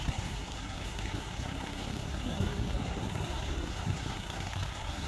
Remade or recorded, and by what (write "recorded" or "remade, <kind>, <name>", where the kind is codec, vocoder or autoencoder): remade, codec, SNAC